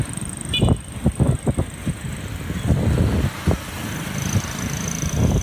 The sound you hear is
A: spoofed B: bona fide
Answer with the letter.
B